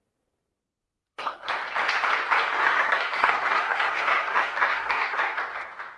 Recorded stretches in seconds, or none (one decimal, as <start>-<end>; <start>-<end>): 0.0-0.8; 1.5-2.6; 5.4-6.0